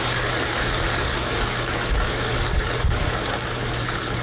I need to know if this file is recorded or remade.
remade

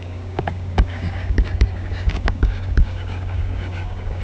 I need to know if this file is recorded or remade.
remade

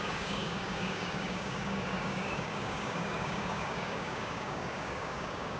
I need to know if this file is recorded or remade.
remade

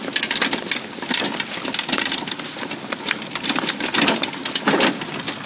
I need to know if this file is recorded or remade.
recorded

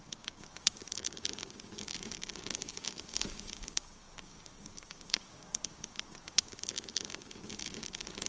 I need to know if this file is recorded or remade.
remade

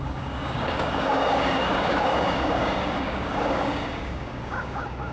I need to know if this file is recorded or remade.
remade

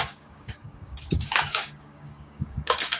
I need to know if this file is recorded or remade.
remade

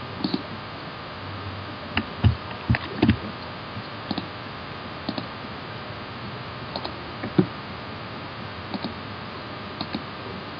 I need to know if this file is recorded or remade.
recorded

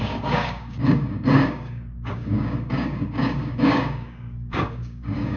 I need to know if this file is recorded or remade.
remade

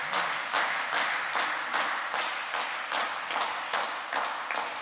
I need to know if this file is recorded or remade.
recorded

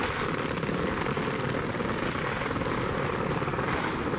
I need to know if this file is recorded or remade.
recorded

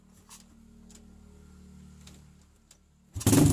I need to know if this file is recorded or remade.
recorded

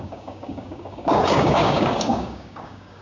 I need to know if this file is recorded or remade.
remade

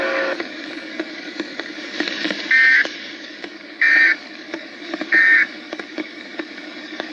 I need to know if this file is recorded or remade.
remade